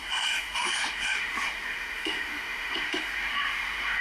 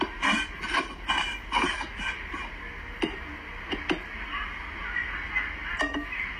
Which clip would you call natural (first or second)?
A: second